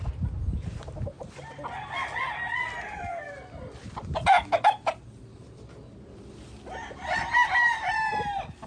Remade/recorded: recorded